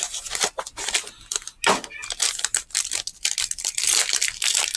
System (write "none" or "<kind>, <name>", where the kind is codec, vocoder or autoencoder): none